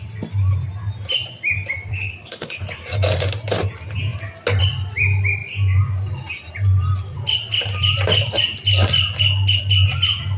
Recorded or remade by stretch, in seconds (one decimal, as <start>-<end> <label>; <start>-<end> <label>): 0.0-1.9 recorded; 1.9-2.6 remade; 2.6-10.4 recorded